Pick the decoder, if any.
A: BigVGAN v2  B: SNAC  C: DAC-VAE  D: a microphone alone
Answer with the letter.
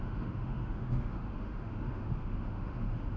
C